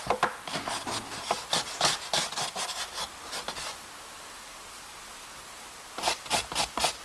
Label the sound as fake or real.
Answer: real